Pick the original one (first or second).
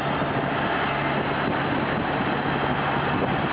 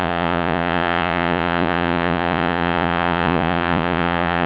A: first